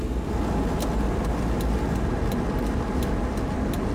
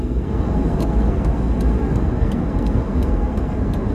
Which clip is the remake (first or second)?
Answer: second